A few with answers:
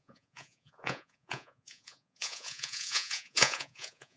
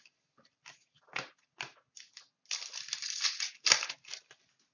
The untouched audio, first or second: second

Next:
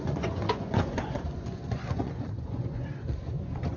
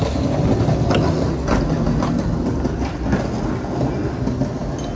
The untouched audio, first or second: second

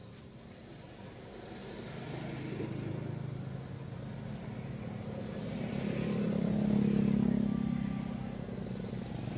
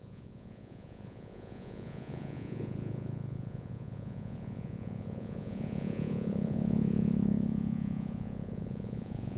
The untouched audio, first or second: first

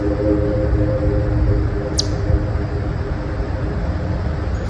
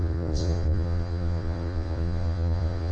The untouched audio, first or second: first